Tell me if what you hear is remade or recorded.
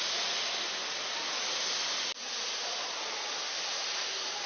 recorded